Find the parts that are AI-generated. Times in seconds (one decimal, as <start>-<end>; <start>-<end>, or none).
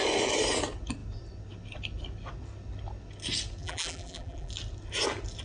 3.6-4.5